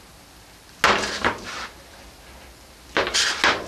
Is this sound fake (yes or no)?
no